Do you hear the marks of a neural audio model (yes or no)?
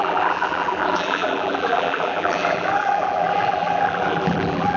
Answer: yes